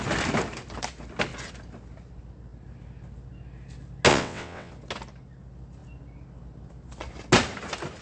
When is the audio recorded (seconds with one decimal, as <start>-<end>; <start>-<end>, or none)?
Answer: 0.0-4.1; 4.7-8.0